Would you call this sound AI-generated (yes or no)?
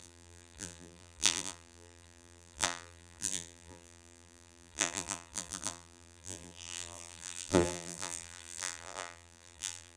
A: yes